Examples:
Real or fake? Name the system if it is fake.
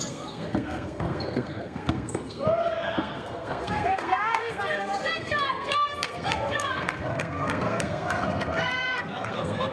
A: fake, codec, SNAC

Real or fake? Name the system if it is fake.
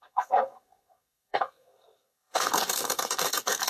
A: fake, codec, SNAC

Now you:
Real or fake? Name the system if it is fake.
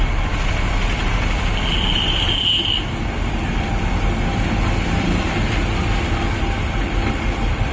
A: real